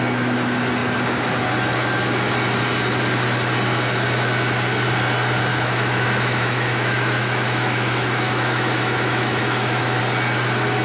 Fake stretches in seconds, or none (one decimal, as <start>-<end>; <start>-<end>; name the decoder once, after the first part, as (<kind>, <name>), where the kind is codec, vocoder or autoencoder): 5.5-10.0 (autoencoder, DAC-VAE)

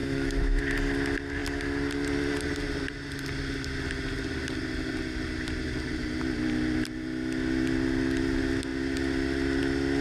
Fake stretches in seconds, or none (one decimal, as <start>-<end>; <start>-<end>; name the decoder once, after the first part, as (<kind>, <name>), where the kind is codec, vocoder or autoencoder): 0.0-0.6 (autoencoder, DAC-VAE)

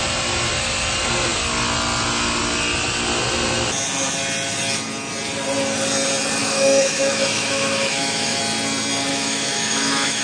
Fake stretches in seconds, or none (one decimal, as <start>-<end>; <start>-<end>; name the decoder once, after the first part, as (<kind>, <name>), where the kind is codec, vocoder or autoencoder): 6.4-8.4 (autoencoder, DAC-VAE); 9.1-10.2